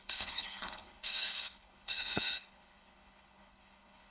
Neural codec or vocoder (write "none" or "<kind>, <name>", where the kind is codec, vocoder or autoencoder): codec, HILCodec